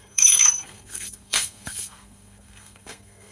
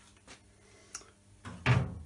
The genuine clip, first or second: second